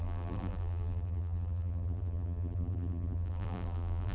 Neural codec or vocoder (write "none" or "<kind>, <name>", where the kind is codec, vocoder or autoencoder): vocoder, BigVGAN v2